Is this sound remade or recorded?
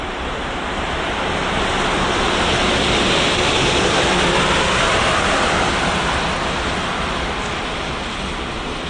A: remade